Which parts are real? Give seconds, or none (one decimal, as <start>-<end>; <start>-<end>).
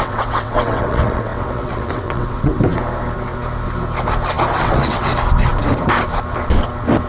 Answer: 2.5-4.6; 5.1-7.1